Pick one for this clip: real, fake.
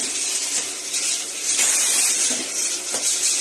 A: real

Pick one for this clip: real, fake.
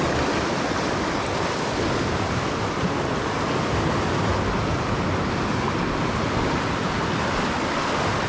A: real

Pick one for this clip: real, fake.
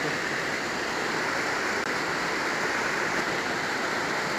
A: real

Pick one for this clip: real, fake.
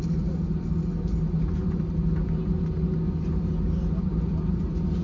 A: real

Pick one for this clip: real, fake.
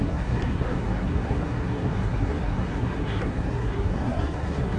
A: fake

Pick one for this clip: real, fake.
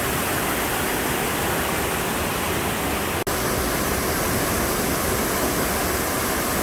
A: real